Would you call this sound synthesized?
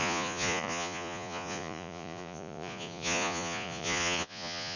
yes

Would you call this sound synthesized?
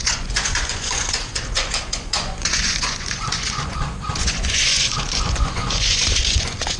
yes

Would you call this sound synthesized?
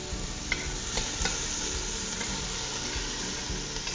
no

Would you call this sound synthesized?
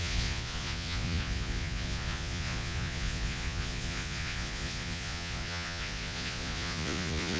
yes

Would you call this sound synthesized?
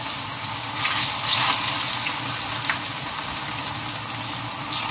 no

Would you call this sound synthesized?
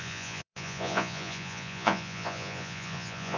yes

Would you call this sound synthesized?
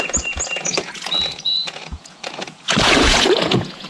yes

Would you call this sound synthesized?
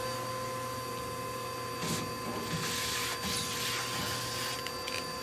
no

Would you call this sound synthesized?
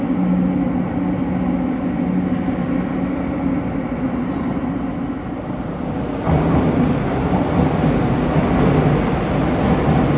no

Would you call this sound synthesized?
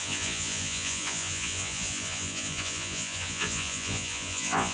yes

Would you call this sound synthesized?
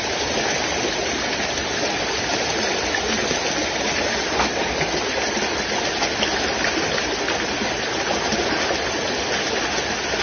no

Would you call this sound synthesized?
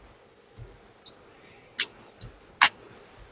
no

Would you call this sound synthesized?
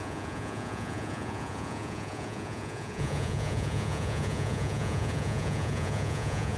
yes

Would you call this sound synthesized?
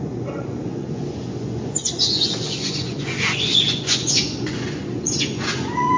yes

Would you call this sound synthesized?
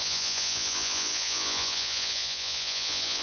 yes